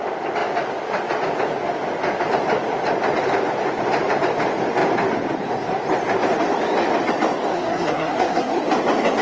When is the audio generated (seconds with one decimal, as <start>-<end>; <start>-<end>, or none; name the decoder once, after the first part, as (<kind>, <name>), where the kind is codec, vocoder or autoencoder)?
7.5-8.6 (codec, SNAC)